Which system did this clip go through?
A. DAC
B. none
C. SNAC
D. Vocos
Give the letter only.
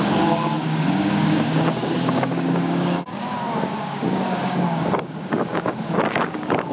A